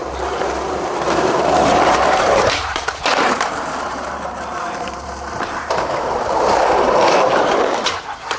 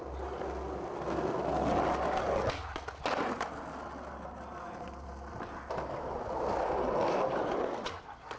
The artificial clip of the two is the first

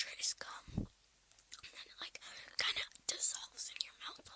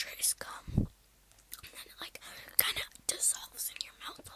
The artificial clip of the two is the first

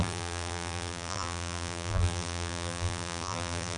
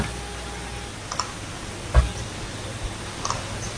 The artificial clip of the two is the first